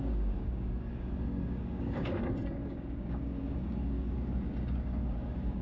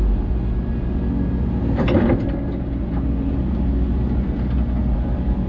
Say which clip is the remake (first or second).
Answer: first